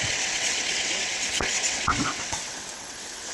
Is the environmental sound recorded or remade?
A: remade